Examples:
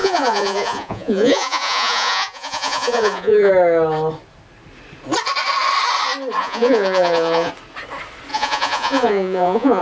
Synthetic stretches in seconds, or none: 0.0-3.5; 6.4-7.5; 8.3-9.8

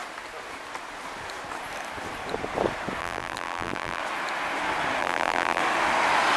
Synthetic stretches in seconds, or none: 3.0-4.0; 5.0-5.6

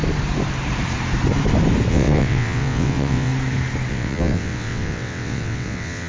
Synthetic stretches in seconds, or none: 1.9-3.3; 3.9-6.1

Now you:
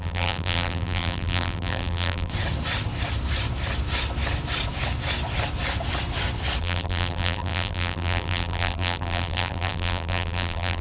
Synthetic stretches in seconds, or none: 0.0-2.3; 6.6-10.8

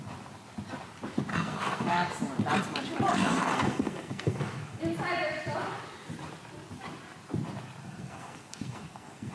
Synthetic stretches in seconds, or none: 1.3-2.1; 3.1-4.8; 7.8-9.3

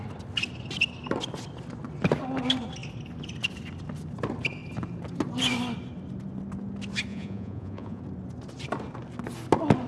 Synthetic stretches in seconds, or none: 7.1-8.0

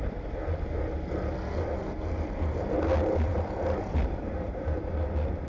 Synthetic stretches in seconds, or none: 0.0-0.4; 3.3-4.8